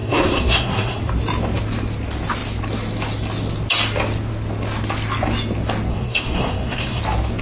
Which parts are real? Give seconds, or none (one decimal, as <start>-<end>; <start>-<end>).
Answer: 1.0-5.9; 7.0-7.4